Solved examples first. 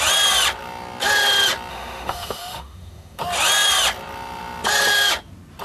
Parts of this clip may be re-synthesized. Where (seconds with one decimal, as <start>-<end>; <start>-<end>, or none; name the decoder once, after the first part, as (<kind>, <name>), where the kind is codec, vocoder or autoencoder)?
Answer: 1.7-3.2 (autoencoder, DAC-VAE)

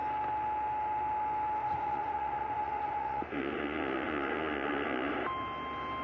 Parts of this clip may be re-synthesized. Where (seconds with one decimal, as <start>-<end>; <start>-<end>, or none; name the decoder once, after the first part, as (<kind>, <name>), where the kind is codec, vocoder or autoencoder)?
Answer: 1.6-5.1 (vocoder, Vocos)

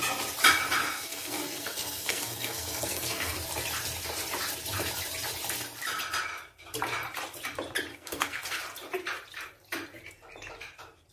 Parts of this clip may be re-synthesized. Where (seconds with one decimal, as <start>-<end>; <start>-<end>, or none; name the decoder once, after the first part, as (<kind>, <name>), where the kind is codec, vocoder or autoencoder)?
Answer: 0.8-3.4 (codec, SNAC); 7.9-8.6